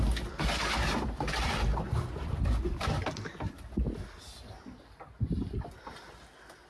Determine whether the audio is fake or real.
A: real